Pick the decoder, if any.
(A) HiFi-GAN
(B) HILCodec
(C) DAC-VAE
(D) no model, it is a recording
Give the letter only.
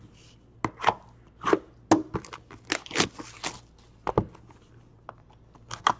D